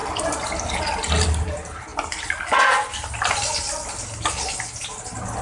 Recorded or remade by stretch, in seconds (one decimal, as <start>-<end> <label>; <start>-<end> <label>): 0.0-5.4 recorded